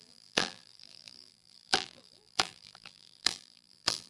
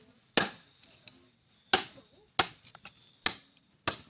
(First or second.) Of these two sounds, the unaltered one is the second